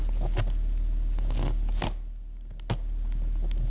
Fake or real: real